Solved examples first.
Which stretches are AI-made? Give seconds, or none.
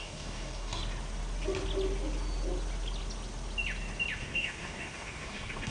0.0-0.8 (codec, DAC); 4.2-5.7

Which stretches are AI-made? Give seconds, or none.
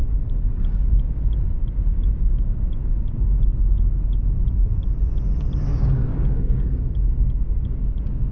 0.0-1.2 (codec, DAC); 1.9-2.7; 5.7-7.8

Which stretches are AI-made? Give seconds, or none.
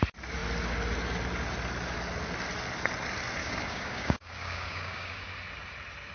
3.4-5.2 (codec, DAC)